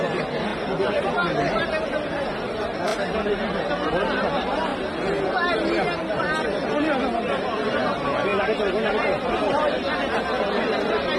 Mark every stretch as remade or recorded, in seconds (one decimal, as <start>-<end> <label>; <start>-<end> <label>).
0.0-11.2 recorded